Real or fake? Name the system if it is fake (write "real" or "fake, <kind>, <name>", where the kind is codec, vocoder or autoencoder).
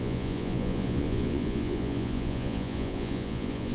fake, vocoder, Vocos